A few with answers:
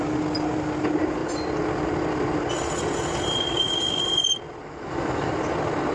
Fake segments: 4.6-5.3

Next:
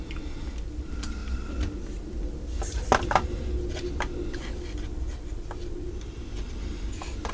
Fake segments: none

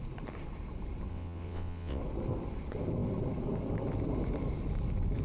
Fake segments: 1.1-2.0

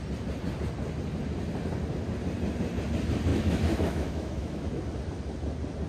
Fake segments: 3.3-4.8

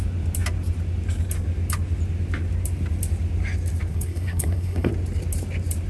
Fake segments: 3.9-4.9

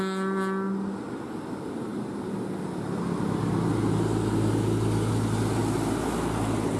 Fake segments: none